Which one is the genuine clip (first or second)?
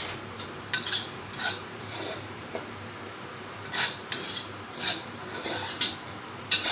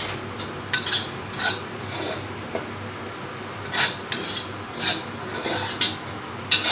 second